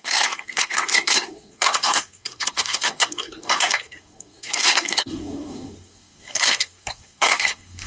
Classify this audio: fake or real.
fake